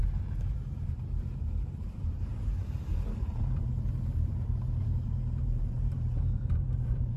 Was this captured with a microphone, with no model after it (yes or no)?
no